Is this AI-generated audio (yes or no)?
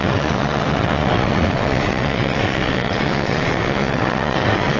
yes